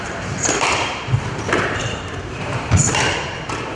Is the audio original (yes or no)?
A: no